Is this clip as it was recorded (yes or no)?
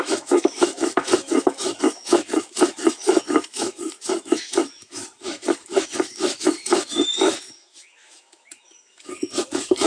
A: no